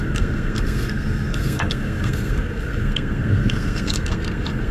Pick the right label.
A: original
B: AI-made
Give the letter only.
B